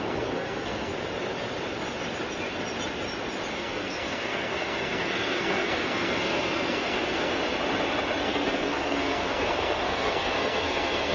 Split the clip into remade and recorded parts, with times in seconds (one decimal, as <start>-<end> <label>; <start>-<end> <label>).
0.0-0.9 remade; 0.9-3.5 recorded; 3.5-7.4 remade; 7.4-8.2 recorded; 8.2-11.1 remade